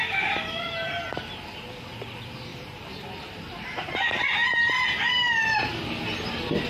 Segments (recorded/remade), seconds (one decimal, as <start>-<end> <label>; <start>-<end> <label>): 0.0-2.5 recorded; 2.5-3.9 remade; 3.9-6.7 recorded